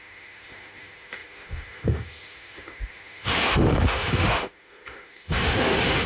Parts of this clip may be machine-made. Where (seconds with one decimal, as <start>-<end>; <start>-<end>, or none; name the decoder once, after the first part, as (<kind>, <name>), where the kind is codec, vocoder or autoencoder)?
0.0-6.1 (autoencoder, DAC-VAE)